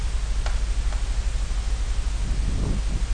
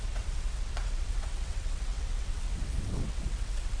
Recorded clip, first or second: first